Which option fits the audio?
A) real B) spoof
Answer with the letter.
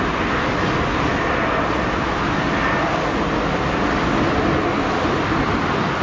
A